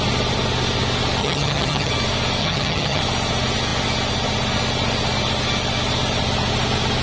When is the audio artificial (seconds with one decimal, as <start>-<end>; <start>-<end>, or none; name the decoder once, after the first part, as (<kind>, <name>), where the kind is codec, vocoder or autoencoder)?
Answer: 1.2-1.9 (vocoder, HiFi-GAN); 2.4-3.0

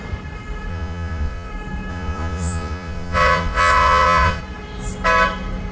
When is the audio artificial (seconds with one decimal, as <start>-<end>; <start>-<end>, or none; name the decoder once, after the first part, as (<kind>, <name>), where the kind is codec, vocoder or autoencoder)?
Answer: 0.7-1.5 (vocoder, Vocos); 1.9-4.4

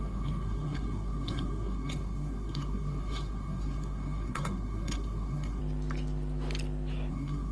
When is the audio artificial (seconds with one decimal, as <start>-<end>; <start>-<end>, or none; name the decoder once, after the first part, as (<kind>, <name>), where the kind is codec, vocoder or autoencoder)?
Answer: 0.0-5.6 (codec, SNAC); 7.1-7.5

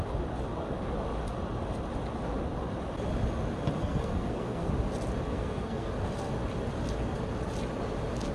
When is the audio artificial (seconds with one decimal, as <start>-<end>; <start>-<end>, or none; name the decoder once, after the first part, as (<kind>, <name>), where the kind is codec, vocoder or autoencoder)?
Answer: 3.8-4.7 (codec, SNAC); 5.3-5.9

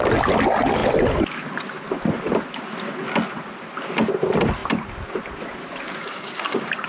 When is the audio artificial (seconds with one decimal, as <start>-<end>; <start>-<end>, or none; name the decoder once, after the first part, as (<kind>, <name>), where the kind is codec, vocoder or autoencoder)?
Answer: 6.0-6.9 (codec, DAC)

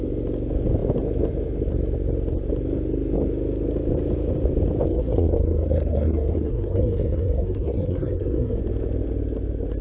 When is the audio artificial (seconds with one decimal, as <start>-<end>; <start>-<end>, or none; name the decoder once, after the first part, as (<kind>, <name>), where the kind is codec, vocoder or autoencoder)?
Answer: 4.9-8.6 (codec, SNAC)

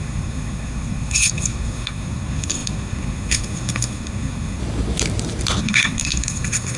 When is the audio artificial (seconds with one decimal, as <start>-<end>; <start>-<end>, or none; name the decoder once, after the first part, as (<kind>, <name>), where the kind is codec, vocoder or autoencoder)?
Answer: 0.0-4.6 (codec, SNAC); 5.6-6.8